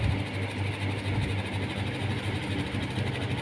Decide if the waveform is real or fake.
real